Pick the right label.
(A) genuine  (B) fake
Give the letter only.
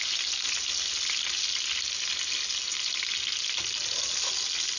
A